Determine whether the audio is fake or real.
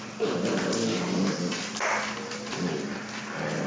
real